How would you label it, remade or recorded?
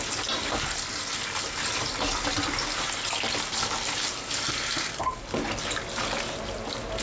recorded